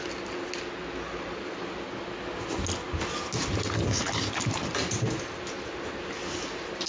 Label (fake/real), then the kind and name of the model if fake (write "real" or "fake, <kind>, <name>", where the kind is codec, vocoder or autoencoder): real